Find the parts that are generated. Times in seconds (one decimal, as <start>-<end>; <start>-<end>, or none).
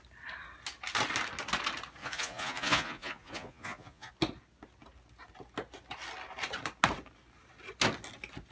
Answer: 2.0-4.1